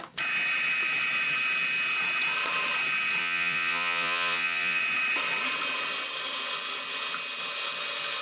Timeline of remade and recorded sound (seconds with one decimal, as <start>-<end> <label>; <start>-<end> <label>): 0.0-3.2 recorded; 3.2-4.8 remade; 4.8-8.2 recorded